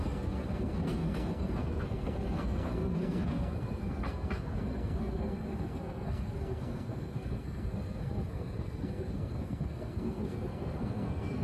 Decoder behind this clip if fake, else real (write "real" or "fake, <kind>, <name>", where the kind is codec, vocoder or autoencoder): fake, codec, SNAC